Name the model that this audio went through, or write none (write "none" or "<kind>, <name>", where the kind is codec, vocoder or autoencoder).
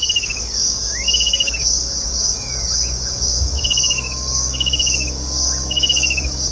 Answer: codec, DAC